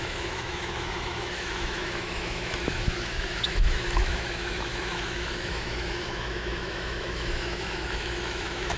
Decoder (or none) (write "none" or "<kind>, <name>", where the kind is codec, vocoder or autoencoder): autoencoder, DAC-VAE